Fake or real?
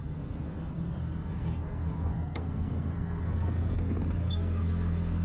fake